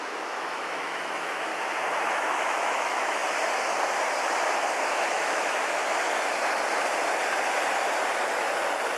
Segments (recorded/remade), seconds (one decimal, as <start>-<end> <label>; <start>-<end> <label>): 0.0-1.5 remade; 1.5-2.1 recorded; 2.1-3.2 remade; 3.2-5.1 recorded; 5.1-5.8 remade; 5.8-9.0 recorded